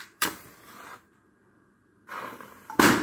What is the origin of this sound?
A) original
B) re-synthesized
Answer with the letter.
B